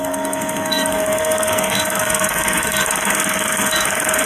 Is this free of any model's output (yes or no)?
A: no